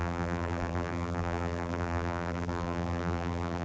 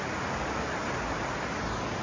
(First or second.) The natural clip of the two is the second